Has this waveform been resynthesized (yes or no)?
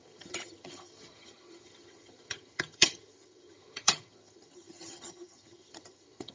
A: yes